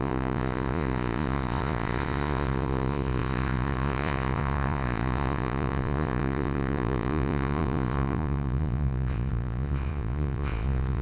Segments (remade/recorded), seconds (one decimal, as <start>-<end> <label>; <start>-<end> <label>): 0.0-11.0 remade